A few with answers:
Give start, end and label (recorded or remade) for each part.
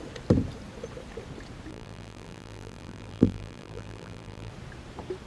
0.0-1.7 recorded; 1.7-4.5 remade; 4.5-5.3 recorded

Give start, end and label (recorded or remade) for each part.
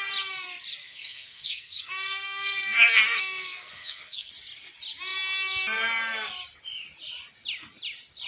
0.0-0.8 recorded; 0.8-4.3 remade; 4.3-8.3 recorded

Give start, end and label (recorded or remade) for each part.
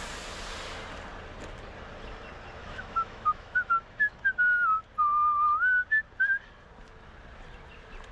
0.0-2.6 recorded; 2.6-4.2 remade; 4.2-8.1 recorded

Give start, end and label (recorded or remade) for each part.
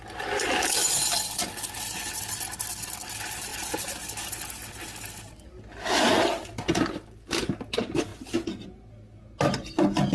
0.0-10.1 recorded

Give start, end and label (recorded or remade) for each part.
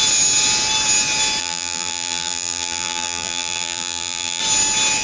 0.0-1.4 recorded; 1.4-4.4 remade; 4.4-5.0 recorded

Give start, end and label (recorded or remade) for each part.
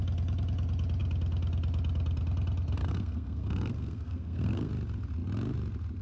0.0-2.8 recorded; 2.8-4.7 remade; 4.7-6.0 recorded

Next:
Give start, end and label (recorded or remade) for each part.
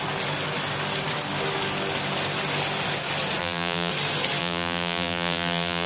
0.0-3.4 recorded; 3.4-3.9 remade; 3.9-4.4 recorded; 4.4-5.9 remade